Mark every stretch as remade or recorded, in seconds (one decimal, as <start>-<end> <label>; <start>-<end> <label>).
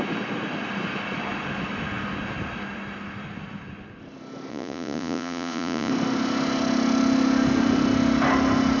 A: 0.0-4.5 recorded; 4.5-5.9 remade; 5.9-8.8 recorded